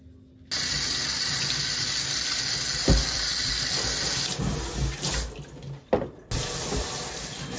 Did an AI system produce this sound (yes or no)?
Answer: no